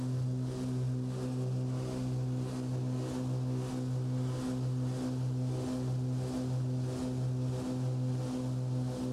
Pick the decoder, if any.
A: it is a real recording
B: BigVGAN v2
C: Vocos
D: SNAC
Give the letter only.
A